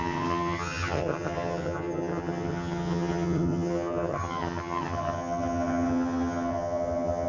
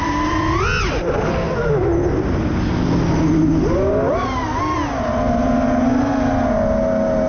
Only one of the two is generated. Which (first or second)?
first